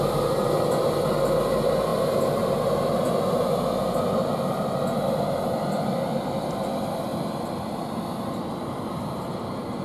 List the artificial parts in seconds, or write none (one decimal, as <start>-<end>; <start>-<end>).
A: 0.0-1.9; 5.2-7.1; 8.0-9.8

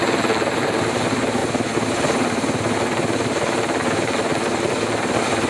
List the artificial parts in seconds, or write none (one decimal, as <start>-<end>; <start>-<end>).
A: none

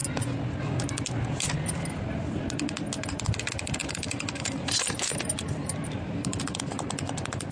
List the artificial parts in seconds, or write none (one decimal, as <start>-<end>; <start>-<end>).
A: 3.8-6.5